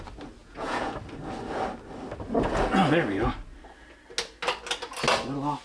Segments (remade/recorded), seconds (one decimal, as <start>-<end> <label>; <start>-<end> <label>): 0.0-0.4 recorded; 0.4-1.0 remade; 1.0-5.6 recorded